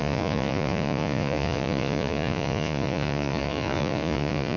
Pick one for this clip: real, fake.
fake